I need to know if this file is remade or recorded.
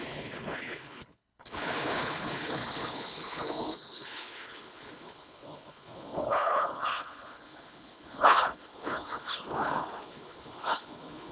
remade